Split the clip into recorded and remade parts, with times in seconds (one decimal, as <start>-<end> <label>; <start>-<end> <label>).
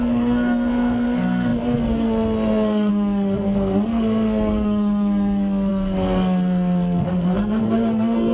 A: 0.0-8.3 remade